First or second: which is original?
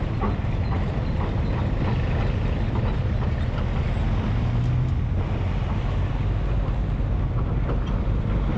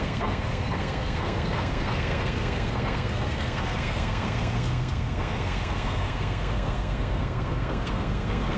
first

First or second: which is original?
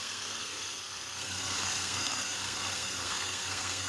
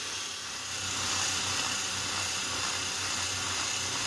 second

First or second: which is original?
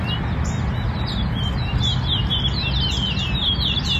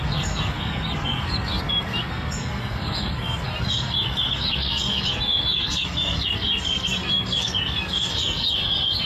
first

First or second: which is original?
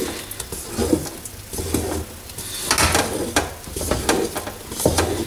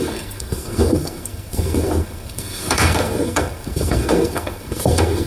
first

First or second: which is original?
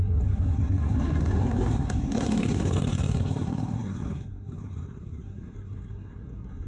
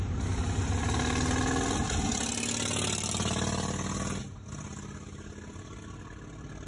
second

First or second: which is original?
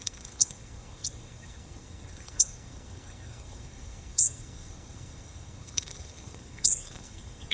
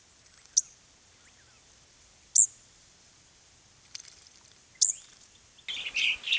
second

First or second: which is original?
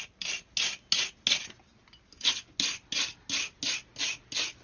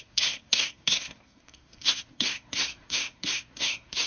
first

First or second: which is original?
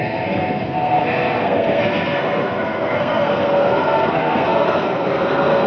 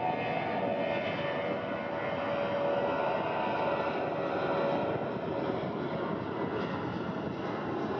second